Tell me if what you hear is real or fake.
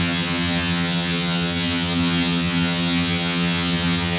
fake